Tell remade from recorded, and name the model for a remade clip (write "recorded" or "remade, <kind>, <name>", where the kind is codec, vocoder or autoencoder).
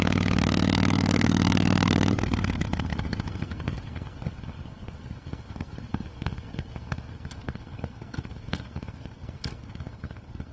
remade, codec, SNAC